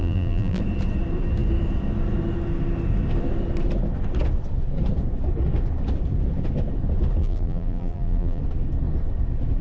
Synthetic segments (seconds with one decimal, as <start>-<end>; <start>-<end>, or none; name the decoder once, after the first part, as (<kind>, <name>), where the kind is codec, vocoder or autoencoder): 0.0-0.6 (vocoder, BigVGAN v2); 7.2-8.4